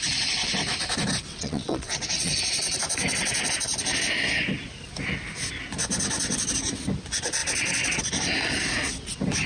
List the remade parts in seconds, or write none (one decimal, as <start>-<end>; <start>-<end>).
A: 1.3-2.3